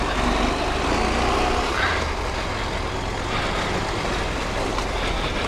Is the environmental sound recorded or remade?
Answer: recorded